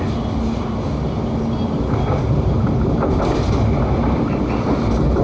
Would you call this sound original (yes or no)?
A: yes